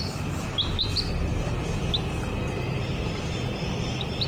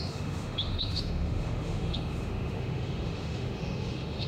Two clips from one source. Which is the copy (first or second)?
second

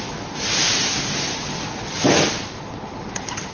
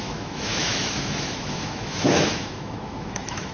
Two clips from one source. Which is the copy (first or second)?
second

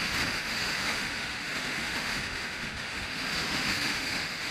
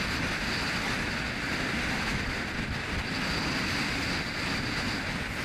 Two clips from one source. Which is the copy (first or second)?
first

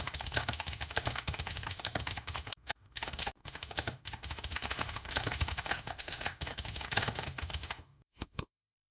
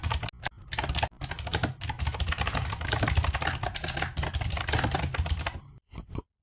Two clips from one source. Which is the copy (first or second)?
first